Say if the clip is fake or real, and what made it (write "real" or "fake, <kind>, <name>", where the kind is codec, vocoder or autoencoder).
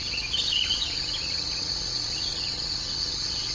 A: fake, vocoder, Vocos